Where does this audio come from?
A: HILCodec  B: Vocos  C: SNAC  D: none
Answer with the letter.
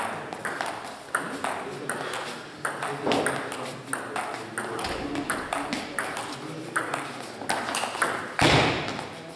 D